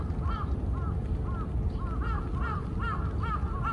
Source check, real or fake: real